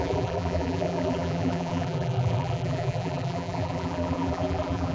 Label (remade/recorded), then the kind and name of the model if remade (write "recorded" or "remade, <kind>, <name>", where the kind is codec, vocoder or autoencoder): remade, vocoder, BigVGAN v2